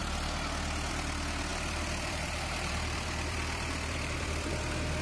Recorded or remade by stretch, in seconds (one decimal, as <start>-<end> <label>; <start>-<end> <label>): 0.0-1.5 recorded; 1.5-4.5 remade; 4.5-5.0 recorded